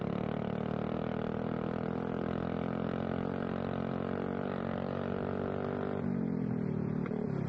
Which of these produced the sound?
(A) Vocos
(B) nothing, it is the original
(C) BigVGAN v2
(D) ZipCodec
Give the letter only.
B